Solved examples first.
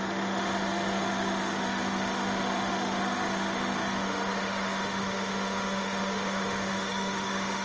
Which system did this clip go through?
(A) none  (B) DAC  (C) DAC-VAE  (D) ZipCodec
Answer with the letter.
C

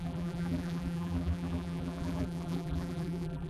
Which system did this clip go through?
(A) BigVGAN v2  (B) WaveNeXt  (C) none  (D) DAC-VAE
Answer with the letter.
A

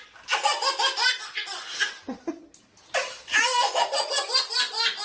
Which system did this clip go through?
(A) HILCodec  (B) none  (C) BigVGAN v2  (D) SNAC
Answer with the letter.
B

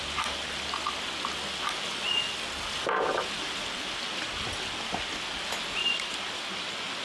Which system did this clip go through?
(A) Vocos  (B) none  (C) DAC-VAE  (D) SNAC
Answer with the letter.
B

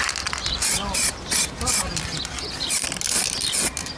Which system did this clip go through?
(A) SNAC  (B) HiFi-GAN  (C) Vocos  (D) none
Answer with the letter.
D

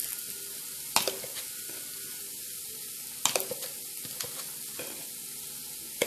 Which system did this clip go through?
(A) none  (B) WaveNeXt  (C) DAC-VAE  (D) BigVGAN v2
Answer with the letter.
A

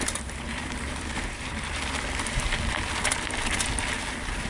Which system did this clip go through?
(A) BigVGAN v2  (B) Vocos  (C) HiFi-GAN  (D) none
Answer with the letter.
A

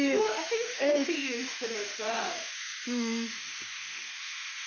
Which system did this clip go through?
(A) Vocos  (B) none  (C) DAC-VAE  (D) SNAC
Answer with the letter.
C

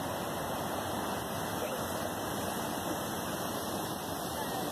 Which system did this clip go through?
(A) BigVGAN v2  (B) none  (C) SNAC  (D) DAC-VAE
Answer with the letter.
B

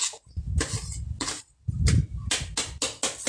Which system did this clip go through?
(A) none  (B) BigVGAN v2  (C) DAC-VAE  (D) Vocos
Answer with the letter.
A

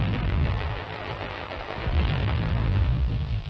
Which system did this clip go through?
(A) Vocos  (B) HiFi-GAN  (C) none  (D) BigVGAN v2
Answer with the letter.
D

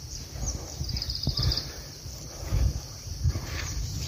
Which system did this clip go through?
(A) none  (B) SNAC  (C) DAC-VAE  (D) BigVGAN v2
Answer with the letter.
A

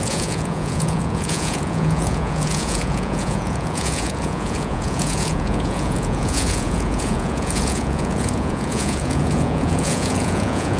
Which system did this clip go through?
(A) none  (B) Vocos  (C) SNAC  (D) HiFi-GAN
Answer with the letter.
B